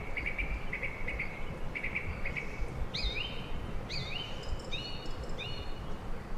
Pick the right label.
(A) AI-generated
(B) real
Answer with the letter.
B